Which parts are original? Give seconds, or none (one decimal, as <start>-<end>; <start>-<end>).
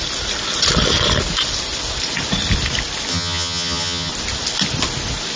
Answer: 0.0-3.1; 4.1-5.4